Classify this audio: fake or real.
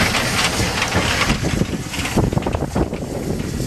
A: real